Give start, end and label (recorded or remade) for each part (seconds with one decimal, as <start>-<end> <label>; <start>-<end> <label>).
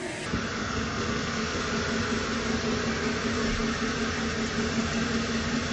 0.0-0.6 recorded; 0.6-1.6 remade; 1.6-5.7 recorded